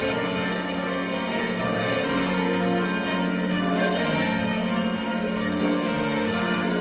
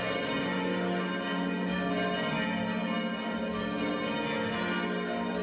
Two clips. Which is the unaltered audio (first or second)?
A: second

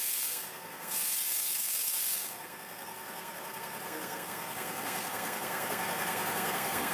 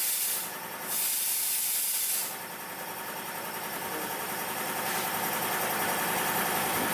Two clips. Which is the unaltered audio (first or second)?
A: second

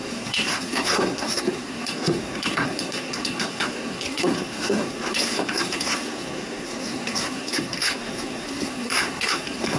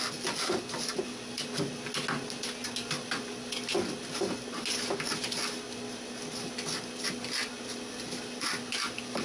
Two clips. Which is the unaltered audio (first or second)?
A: second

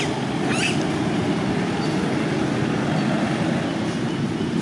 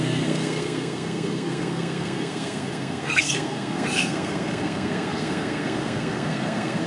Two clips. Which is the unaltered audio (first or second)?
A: first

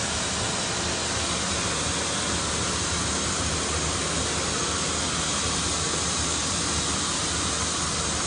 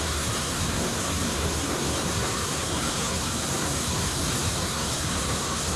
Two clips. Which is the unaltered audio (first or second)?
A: first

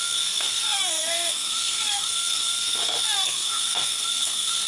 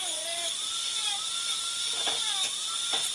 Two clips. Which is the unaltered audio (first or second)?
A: second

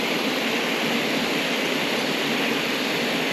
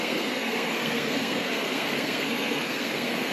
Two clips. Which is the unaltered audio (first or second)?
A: first